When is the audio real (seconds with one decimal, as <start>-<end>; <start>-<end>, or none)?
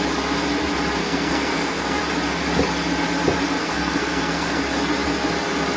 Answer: 0.0-1.0; 2.0-3.6; 4.6-5.8